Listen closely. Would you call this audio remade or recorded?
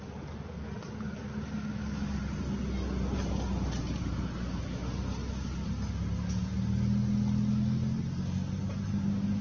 recorded